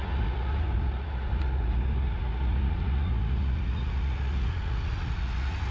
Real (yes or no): no